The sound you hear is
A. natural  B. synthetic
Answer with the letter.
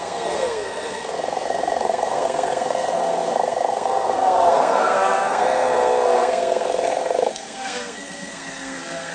B